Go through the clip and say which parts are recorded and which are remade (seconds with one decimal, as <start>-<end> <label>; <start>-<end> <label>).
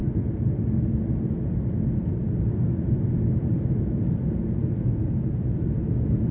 0.0-6.3 recorded